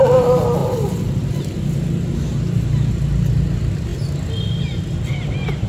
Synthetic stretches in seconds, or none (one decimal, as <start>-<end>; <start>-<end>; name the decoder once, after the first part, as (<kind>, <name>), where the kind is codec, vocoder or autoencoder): none